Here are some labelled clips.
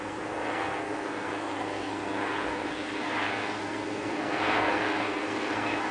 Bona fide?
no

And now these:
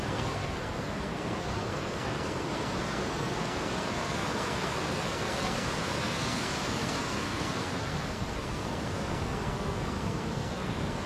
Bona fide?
no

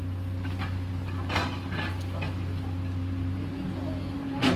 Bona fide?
yes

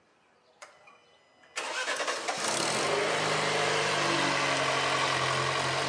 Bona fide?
yes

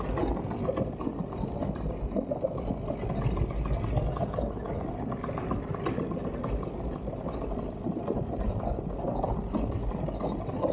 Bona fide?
yes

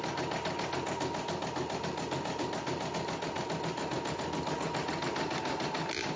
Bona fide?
yes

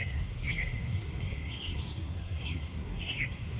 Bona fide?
no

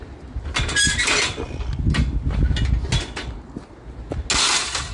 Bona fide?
yes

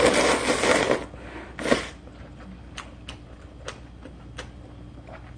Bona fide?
yes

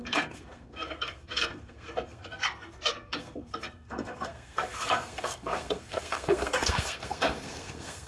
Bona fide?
no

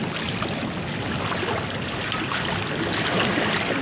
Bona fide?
yes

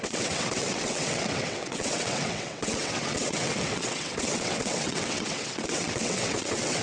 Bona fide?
no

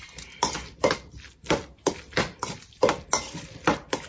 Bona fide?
yes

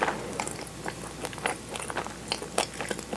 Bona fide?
yes